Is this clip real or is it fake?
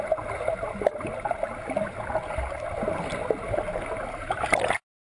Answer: real